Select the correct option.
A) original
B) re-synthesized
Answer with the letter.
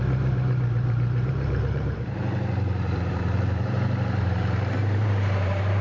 B